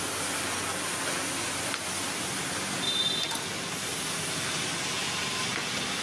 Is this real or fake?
real